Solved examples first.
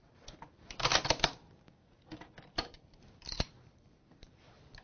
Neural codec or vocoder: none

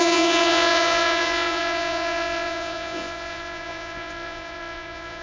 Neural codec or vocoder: vocoder, Vocos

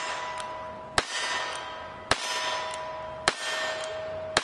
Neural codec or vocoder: none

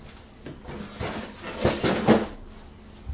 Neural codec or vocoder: none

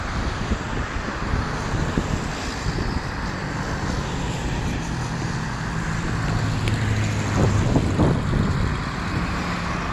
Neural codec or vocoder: none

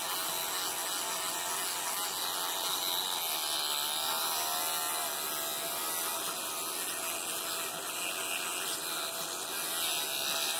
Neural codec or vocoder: none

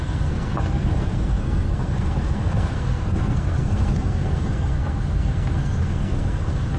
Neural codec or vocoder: codec, SNAC